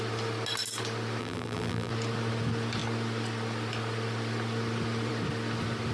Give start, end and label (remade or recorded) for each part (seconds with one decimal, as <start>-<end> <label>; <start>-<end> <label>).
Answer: 0.0-1.2 recorded; 1.2-1.9 remade; 1.9-5.9 recorded